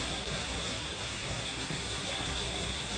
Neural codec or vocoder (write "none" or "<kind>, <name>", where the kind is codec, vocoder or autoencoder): codec, SNAC